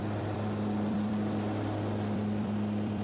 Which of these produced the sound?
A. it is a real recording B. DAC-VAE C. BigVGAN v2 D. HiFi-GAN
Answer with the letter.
C